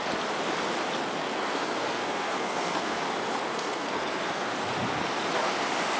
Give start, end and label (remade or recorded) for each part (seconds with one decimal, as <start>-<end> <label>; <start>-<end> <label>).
0.0-1.2 recorded; 1.2-3.0 remade; 3.0-3.5 recorded; 3.5-4.5 remade; 4.5-6.0 recorded